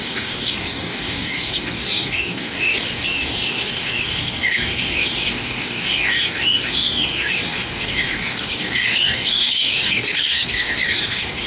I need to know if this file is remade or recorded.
remade